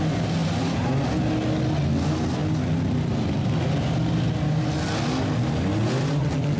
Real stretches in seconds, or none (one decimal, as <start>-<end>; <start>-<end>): 0.0-6.6